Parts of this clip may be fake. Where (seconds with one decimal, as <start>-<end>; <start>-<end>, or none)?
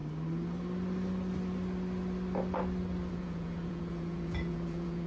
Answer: 3.1-5.1